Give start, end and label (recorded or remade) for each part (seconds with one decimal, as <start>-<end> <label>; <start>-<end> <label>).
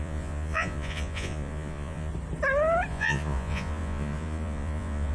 0.0-2.1 remade; 2.1-2.9 recorded; 2.9-5.1 remade